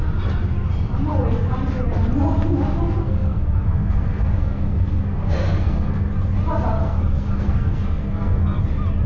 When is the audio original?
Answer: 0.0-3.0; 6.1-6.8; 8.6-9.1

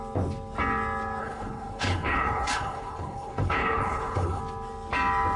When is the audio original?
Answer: 0.0-1.2; 4.4-5.4